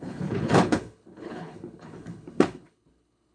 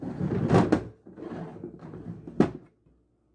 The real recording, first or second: second